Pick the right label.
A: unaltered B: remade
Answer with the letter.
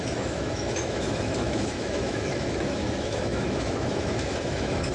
B